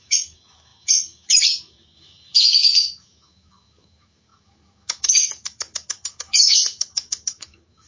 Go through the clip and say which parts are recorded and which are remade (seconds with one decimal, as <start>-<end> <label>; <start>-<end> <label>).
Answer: 0.0-7.9 remade